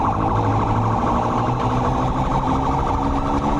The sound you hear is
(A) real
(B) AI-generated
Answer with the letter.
A